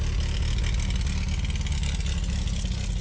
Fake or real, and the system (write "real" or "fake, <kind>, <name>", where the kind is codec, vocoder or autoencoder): real